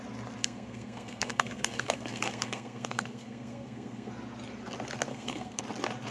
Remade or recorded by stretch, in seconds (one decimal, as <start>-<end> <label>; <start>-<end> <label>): 0.0-0.4 recorded; 0.4-4.1 remade; 4.1-5.1 recorded; 5.1-5.6 remade; 5.6-6.1 recorded